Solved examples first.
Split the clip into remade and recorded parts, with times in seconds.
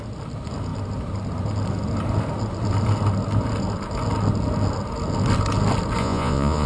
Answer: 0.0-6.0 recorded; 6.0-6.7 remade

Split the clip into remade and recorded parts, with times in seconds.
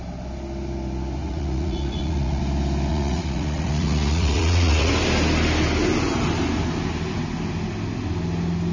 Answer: 0.0-1.2 recorded; 1.2-2.4 remade; 2.4-2.9 recorded; 2.9-4.9 remade; 4.9-8.7 recorded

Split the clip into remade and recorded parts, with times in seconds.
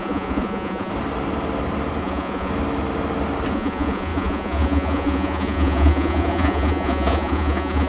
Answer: 0.0-0.9 remade; 0.9-2.0 recorded; 2.0-2.5 remade; 2.5-3.5 recorded; 3.5-7.9 remade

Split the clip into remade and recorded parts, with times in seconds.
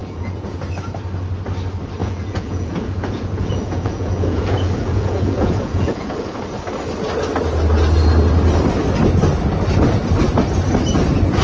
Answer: 0.0-0.7 remade; 0.7-2.0 recorded; 2.0-6.4 remade; 6.4-11.4 recorded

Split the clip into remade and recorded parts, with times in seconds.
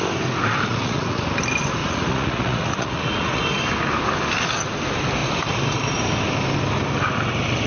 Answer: 0.0-0.7 recorded; 0.7-1.2 remade; 1.2-1.8 recorded; 1.8-3.4 remade; 3.4-7.7 recorded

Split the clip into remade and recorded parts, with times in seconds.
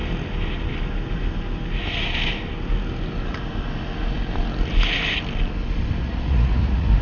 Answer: 0.0-6.0 recorded; 6.0-7.0 remade